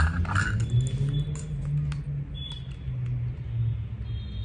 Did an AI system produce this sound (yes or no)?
no